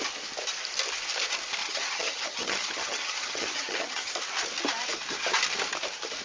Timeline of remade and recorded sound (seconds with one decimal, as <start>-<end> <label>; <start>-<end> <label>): 0.0-1.6 recorded; 1.6-4.1 remade; 4.1-6.2 recorded